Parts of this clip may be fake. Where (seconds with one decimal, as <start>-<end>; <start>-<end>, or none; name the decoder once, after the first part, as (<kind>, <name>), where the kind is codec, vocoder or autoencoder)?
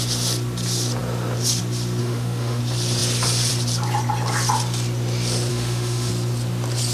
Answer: 2.0-2.6 (autoencoder, DAC-VAE); 5.5-6.1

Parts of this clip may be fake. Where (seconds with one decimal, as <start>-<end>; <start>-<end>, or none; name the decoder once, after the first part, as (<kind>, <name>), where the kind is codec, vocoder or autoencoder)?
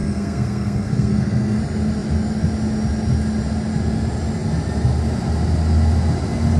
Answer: 0.0-1.6 (codec, SNAC)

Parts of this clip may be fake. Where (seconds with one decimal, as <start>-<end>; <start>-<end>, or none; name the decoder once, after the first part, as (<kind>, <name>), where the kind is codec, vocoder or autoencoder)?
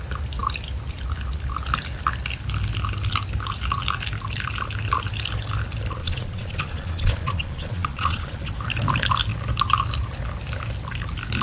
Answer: 6.0-8.5 (vocoder, Vocos)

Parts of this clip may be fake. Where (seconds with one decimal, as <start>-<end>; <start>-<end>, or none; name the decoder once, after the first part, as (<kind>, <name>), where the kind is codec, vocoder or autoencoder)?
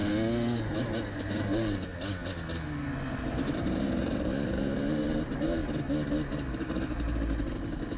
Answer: 0.8-1.9 (vocoder, BigVGAN v2); 3.1-5.6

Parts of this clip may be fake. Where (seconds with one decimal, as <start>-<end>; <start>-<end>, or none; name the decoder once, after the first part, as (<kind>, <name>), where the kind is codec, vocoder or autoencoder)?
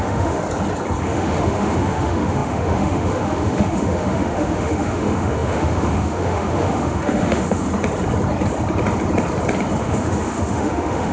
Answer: 0.0-0.4 (autoencoder, DAC-VAE); 1.0-7.7; 9.8-11.1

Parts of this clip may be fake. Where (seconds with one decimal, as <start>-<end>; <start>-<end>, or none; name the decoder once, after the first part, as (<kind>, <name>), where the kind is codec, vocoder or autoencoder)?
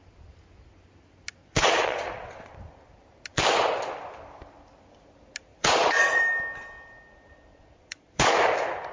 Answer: 1.4-2.5 (vocoder, Vocos); 5.5-6.2; 7.5-8.3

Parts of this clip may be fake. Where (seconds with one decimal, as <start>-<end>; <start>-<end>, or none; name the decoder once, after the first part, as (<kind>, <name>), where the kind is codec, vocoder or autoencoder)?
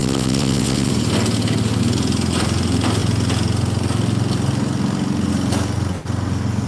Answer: 0.0-0.9 (vocoder, WaveNeXt)